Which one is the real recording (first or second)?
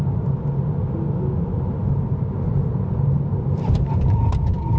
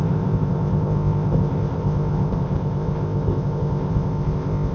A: first